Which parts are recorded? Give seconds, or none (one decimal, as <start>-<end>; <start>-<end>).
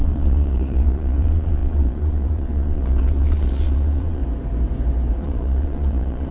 4.2-5.2